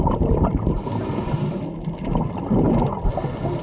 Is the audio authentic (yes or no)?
yes